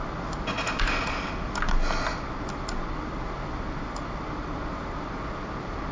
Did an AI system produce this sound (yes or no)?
no